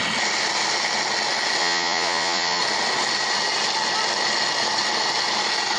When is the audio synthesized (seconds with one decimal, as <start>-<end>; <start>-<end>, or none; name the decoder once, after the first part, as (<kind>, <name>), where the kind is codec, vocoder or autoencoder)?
1.6-2.6 (vocoder, Vocos)